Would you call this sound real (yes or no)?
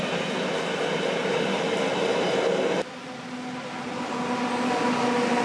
yes